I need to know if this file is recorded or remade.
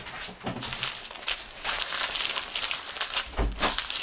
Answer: recorded